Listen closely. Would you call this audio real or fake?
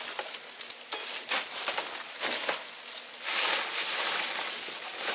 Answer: real